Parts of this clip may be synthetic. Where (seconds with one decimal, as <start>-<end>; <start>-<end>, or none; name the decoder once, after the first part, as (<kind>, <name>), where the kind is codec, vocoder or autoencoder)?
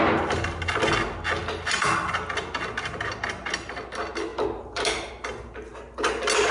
none